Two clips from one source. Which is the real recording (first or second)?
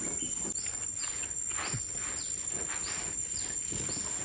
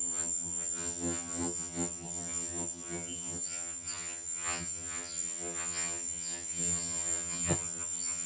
first